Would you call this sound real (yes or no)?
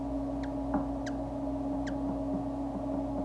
yes